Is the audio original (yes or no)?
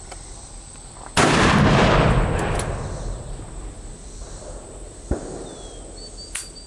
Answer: yes